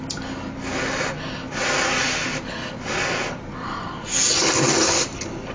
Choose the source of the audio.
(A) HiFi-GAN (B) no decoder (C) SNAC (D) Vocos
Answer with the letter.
B